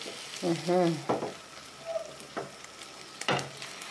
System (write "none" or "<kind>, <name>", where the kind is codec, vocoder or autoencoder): none